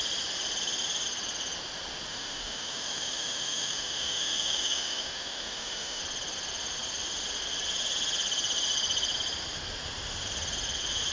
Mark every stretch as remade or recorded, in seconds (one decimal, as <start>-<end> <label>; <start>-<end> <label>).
0.0-2.1 recorded; 2.1-6.0 remade; 6.0-11.1 recorded